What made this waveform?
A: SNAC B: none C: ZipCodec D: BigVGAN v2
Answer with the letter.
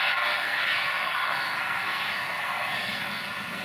A